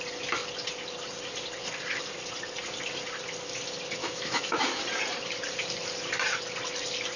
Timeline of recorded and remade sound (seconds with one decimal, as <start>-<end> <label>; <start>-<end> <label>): 0.0-4.0 recorded; 4.0-4.8 remade; 4.8-7.2 recorded